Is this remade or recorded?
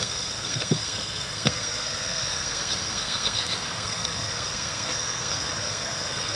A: remade